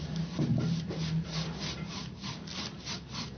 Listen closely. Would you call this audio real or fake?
real